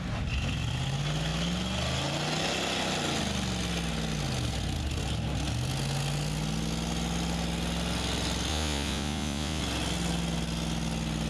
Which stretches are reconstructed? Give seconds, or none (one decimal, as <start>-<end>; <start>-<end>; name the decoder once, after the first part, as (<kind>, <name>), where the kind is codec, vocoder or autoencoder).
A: 8.5-9.6 (vocoder, Vocos)